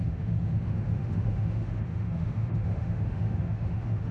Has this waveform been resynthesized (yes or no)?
yes